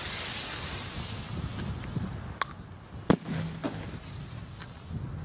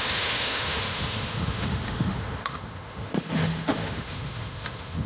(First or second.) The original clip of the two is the first